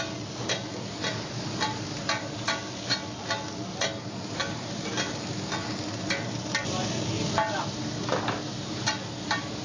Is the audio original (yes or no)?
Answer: yes